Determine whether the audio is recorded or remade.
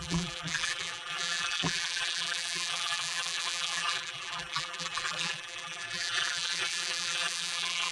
remade